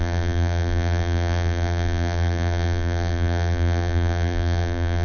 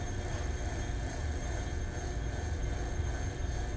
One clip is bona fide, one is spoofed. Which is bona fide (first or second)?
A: second